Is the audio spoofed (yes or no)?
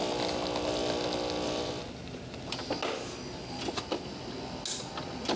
no